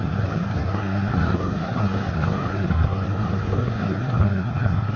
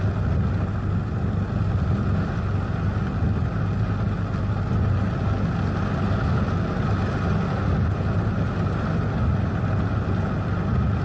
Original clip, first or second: second